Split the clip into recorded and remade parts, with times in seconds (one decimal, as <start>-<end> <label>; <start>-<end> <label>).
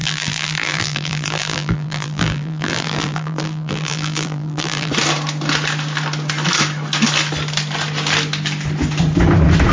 0.0-4.9 remade; 4.9-9.7 recorded